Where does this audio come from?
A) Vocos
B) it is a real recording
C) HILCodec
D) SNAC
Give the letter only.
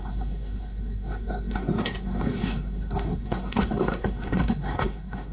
D